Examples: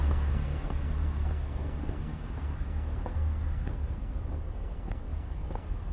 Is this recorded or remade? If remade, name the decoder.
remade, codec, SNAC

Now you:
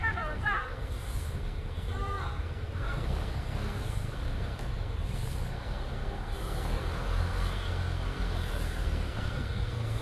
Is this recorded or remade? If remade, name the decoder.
remade, codec, SNAC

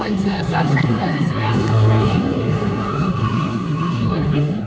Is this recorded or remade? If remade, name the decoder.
remade, codec, SNAC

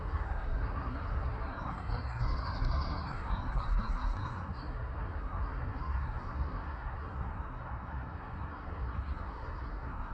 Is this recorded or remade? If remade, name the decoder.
remade, codec, SNAC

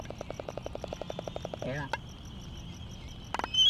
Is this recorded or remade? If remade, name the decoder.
recorded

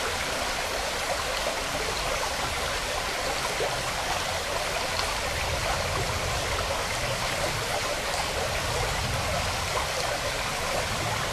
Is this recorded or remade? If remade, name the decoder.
recorded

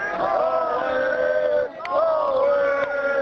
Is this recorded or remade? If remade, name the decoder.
recorded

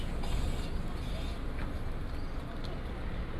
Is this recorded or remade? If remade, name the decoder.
recorded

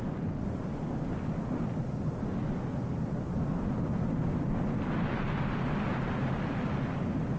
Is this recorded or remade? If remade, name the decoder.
recorded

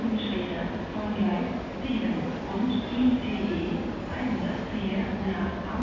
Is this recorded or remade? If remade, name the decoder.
recorded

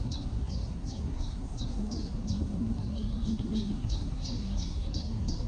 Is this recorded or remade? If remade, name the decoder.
remade, codec, SNAC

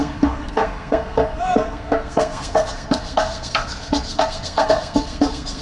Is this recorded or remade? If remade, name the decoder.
remade, codec, SNAC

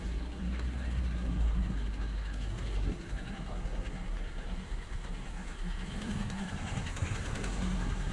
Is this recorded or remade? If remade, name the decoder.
remade, codec, SNAC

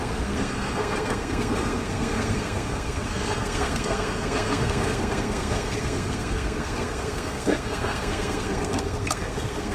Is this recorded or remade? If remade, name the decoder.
remade, codec, SNAC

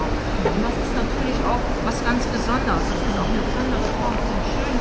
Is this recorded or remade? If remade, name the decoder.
recorded